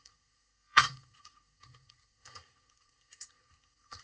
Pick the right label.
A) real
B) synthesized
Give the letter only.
B